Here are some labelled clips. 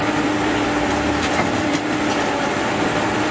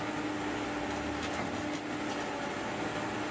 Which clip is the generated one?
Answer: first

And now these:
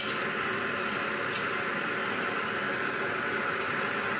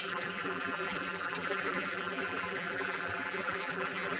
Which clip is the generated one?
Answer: second